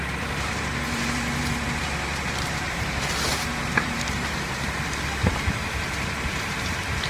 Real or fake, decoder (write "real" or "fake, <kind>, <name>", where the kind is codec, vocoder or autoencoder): fake, vocoder, BigVGAN v2